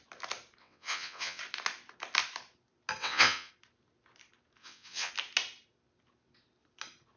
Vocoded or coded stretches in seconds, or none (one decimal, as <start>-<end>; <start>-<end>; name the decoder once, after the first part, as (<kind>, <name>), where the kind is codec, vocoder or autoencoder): 0.6-1.4 (vocoder, WaveNeXt); 3.0-3.5; 4.6-5.1